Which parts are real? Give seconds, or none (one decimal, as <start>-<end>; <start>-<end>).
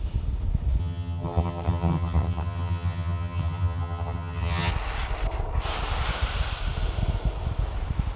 0.0-0.8; 4.7-8.2